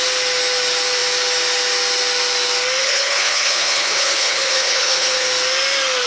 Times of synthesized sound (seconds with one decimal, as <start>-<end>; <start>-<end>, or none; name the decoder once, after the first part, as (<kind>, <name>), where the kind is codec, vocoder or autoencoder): 2.8-5.3 (codec, HILCodec)